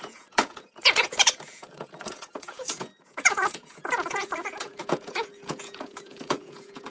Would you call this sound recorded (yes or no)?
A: no